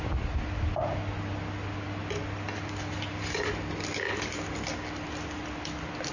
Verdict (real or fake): real